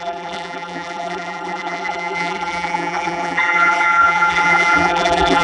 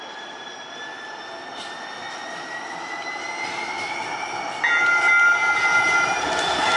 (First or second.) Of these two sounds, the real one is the second